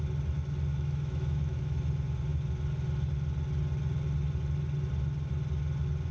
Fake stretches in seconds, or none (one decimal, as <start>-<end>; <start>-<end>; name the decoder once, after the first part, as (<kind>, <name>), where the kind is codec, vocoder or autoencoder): 0.7-1.8 (autoencoder, DAC-VAE)